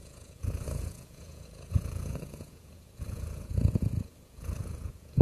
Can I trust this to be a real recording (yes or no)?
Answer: no